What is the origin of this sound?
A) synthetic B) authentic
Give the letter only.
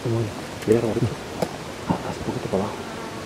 B